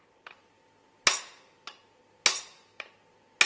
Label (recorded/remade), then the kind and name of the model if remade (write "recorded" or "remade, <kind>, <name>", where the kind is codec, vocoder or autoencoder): recorded